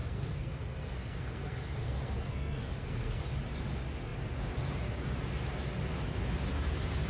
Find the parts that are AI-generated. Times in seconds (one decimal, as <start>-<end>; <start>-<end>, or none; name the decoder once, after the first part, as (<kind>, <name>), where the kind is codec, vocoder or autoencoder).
0.0-3.2 (codec, SNAC)